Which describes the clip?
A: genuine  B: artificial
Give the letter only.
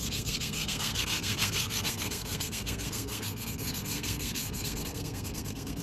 B